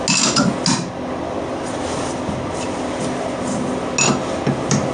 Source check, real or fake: real